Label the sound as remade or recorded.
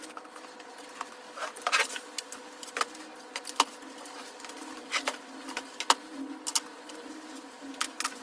recorded